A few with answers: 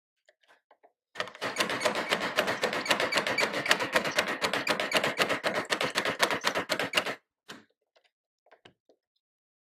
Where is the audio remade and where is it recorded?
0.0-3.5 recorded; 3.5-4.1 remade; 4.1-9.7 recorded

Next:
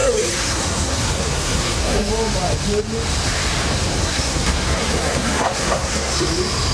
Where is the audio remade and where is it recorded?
0.0-2.1 remade; 2.1-4.0 recorded; 4.0-6.3 remade; 6.3-6.7 recorded

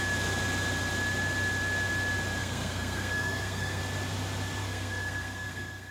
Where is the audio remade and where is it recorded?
0.0-2.4 recorded; 2.4-3.8 remade; 3.8-4.6 recorded; 4.6-5.9 remade

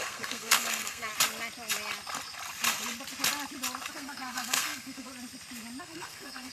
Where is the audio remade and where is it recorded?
0.0-1.1 remade; 1.1-3.9 recorded; 3.9-5.1 remade; 5.1-5.8 recorded; 5.8-6.5 remade

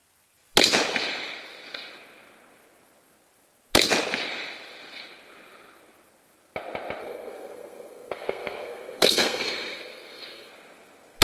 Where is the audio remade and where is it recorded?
0.0-7.0 recorded; 7.0-10.5 remade; 10.5-11.2 recorded

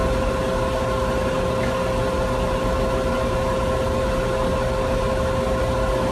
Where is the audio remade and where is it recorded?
0.0-6.1 recorded

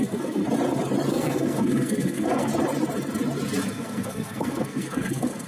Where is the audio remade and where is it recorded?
0.0-0.4 remade; 0.4-1.1 recorded; 1.1-2.5 remade; 2.5-3.7 recorded; 3.7-5.5 remade